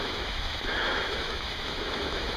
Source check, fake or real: fake